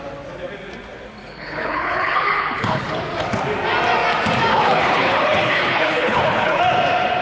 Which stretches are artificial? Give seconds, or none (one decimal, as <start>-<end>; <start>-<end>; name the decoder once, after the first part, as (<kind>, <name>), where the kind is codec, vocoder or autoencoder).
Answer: 1.2-3.0 (codec, HILCodec); 4.5-6.6

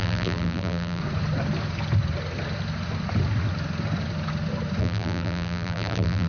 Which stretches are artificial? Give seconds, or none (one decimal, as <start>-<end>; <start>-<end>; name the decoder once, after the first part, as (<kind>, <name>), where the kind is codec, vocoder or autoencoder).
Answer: 0.0-1.0 (vocoder, BigVGAN v2); 4.8-6.3

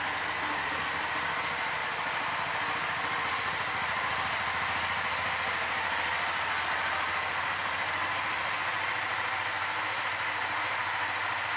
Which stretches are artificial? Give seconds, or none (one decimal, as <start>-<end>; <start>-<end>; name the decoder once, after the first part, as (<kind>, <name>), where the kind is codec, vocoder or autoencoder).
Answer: 1.8-2.3 (vocoder, BigVGAN v2); 9.1-11.6

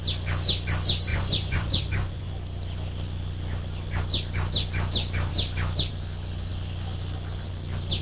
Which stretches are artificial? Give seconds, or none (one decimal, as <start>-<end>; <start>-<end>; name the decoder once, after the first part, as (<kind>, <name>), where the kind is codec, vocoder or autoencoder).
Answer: 1.1-2.3 (vocoder, Vocos)

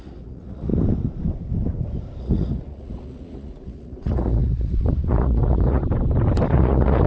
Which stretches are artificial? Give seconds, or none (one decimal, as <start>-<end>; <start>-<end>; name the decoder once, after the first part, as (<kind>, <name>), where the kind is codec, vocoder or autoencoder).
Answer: 0.0-0.7 (vocoder, Vocos); 2.2-5.8; 6.5-7.1

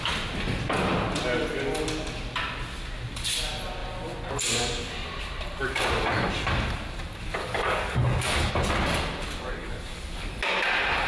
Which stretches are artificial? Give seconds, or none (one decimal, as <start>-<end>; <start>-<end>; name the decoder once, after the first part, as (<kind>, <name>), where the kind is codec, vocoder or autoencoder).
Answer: 7.4-8.5 (codec, DAC); 9.6-10.3